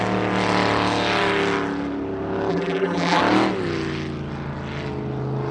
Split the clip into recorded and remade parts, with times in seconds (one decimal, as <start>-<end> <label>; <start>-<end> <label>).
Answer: 0.0-2.5 recorded; 2.5-3.2 remade; 3.2-5.5 recorded